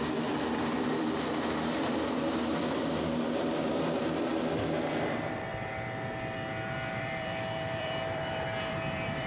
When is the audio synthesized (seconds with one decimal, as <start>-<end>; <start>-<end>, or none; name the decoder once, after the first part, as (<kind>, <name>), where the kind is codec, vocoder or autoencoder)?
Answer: 0.0-4.3 (vocoder, BigVGAN v2); 4.9-5.5; 7.0-9.3